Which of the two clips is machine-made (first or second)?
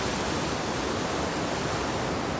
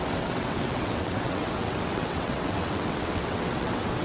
second